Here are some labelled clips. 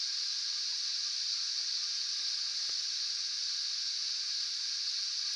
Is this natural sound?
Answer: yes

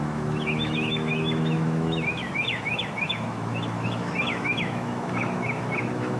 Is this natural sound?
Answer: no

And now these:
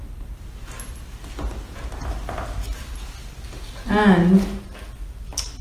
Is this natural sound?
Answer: yes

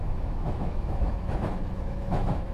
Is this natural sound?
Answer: no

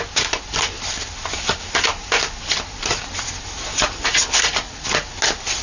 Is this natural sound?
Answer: yes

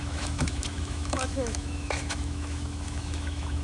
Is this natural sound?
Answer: no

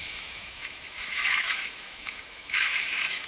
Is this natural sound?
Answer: no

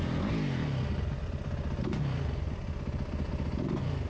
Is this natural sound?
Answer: yes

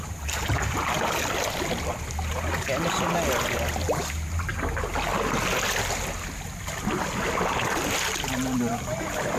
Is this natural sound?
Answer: yes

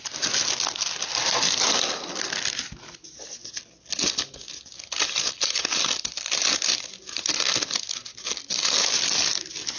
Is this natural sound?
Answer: yes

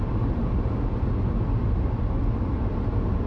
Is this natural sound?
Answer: yes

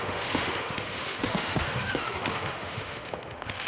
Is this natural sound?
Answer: no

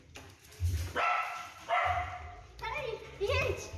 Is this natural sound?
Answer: yes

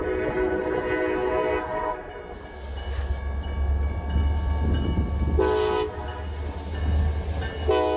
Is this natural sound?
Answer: yes